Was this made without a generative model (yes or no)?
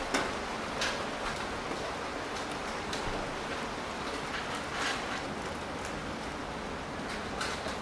yes